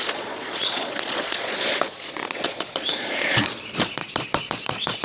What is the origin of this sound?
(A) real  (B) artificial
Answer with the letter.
B